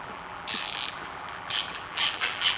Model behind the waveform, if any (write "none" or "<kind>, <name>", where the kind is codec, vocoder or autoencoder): vocoder, BigVGAN v2